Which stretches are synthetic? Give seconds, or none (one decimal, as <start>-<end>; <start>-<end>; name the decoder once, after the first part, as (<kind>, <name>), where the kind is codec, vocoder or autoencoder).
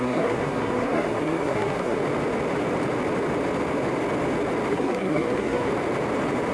0.0-2.0 (codec, SNAC); 4.7-5.7